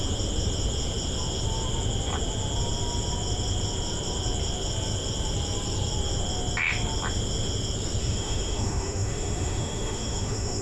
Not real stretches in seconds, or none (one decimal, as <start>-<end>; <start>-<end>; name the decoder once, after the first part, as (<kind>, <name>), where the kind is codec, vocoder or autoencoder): 8.0-10.6 (autoencoder, DAC-VAE)